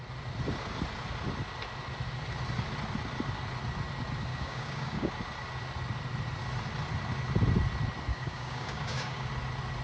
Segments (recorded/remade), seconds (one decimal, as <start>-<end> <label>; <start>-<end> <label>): 0.0-4.3 recorded; 4.3-5.1 remade; 5.1-8.1 recorded; 8.1-9.3 remade; 9.3-9.8 recorded